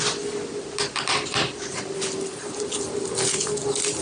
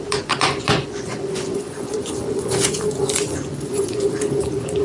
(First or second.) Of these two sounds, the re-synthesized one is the second